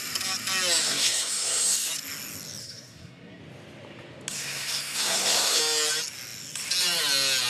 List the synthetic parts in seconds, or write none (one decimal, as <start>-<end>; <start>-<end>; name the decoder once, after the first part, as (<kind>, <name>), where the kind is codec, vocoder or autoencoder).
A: 0.8-1.9 (codec, SNAC); 2.6-3.4; 4.3-5.6